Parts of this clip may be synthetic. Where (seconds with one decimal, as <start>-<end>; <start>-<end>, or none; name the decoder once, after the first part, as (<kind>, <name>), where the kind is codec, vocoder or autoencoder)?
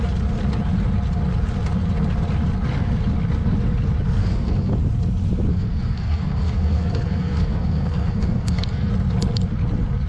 4.2-4.7 (codec, SNAC); 5.5-8.9